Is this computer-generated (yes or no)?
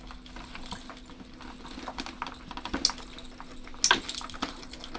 no